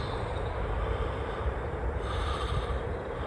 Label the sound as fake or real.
fake